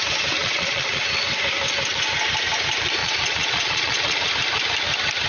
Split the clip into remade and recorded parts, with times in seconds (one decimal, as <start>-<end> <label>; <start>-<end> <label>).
0.0-0.4 recorded; 0.4-1.0 remade; 1.0-3.0 recorded; 3.0-4.3 remade; 4.3-5.3 recorded